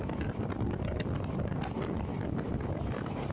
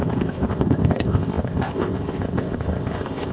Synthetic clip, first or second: second